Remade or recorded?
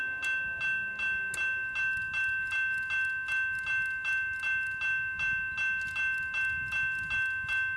recorded